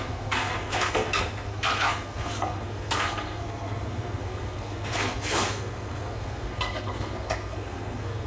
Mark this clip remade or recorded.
remade